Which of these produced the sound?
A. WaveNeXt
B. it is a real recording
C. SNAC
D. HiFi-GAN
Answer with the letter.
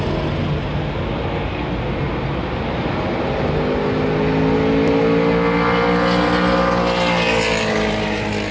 B